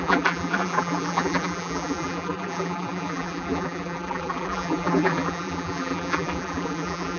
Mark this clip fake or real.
fake